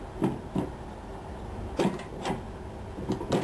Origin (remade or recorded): recorded